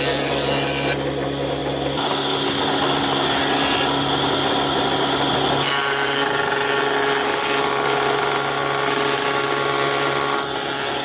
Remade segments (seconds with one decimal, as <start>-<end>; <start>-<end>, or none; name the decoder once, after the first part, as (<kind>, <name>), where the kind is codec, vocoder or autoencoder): none